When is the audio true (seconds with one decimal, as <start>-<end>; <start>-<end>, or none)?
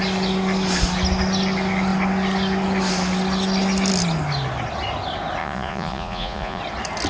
0.0-5.4; 6.6-7.1